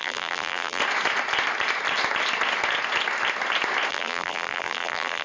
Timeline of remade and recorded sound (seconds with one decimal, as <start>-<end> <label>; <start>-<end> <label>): 0.0-0.8 remade; 0.8-3.9 recorded; 3.9-5.2 remade